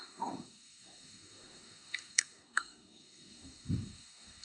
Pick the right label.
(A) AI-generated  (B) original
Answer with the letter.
A